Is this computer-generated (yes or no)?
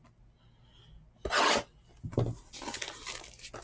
no